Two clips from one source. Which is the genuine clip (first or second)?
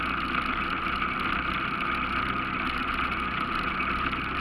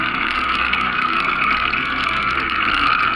first